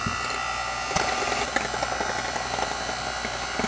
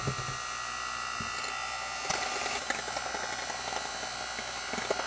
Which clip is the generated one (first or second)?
first